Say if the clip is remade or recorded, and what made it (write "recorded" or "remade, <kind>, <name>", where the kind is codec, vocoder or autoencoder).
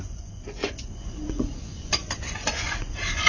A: remade, vocoder, Vocos